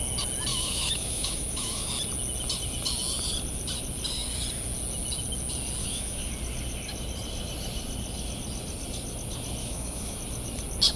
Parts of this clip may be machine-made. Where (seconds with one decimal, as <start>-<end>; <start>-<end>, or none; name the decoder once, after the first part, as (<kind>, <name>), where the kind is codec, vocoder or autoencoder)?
0.5-1.9 (autoencoder, DAC-VAE); 5.8-6.3; 9.6-10.2